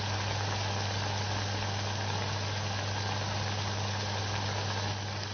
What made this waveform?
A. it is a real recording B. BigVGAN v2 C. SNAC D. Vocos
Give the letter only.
A